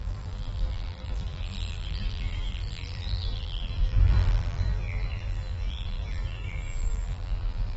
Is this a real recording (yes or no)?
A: no